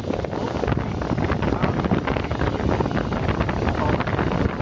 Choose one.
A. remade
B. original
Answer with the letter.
B